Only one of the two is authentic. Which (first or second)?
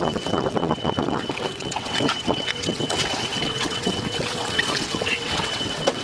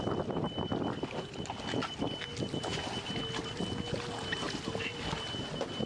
second